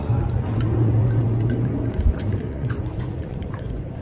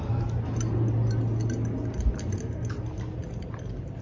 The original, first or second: second